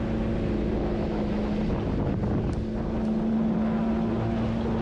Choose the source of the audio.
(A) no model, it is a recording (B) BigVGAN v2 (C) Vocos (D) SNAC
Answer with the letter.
A